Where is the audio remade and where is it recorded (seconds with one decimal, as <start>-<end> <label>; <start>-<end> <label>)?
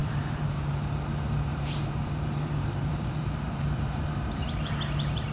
0.0-1.0 remade; 1.0-1.5 recorded; 1.5-4.7 remade; 4.7-5.3 recorded